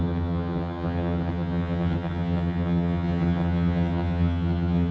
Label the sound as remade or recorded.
remade